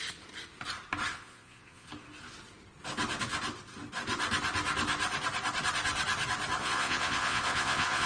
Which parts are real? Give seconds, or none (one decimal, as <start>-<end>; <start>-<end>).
0.0-1.1; 1.9-6.6